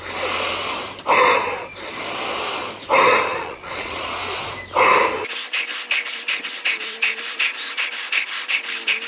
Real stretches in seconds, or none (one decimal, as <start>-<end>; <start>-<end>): 0.0-3.3; 4.1-9.1